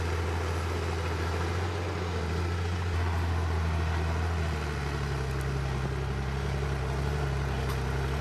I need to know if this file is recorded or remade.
recorded